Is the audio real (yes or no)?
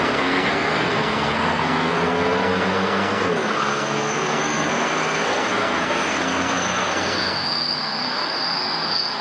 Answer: no